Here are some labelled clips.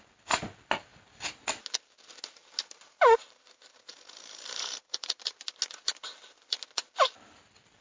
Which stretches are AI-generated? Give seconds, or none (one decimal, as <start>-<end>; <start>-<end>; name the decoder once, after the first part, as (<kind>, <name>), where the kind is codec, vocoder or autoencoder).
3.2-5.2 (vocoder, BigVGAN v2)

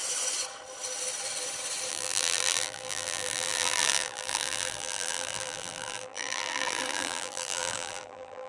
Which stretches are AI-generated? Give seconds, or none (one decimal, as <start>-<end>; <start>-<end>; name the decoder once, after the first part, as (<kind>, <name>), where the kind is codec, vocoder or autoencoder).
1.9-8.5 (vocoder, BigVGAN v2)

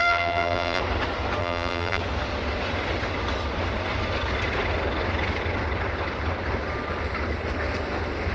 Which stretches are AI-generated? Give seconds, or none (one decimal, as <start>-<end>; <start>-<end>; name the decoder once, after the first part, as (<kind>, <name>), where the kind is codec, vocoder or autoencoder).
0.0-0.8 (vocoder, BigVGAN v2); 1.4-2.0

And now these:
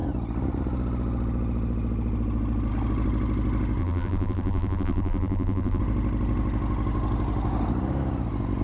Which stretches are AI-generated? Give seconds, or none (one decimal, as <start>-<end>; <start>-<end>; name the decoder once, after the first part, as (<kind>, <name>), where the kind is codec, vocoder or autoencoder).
3.8-5.8 (vocoder, BigVGAN v2)

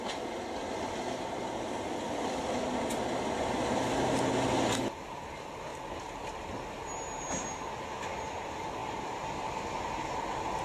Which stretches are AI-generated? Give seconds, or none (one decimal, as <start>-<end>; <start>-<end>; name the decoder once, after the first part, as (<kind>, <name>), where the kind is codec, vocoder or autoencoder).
8.8-9.5 (vocoder, BigVGAN v2)